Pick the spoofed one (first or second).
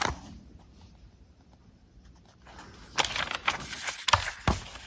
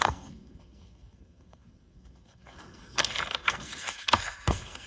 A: second